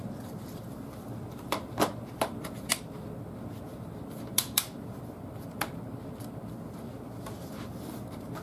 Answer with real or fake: fake